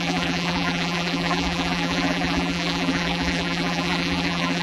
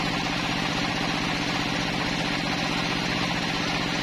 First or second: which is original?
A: second